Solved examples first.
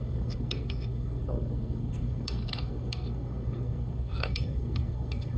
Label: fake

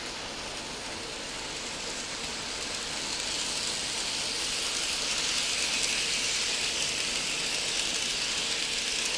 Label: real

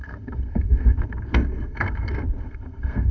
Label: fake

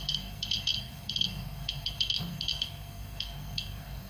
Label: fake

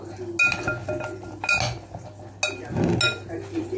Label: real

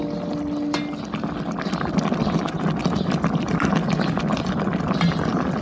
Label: real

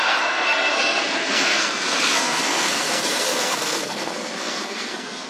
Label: fake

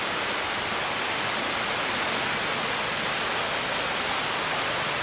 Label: real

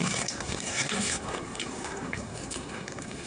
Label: fake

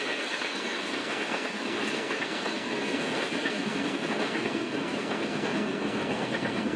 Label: fake